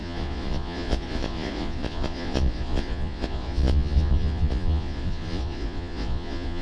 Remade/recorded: remade